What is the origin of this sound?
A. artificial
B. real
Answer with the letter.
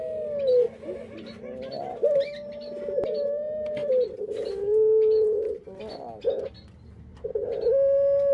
B